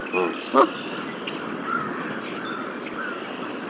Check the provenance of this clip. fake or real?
fake